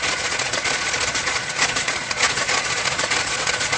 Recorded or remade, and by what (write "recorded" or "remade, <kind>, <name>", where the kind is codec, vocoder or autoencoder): remade, vocoder, Vocos